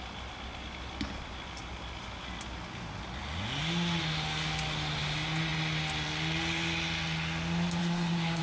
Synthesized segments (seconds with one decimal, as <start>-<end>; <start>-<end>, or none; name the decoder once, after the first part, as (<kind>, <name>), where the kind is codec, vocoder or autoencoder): 7.8-8.4 (codec, SNAC)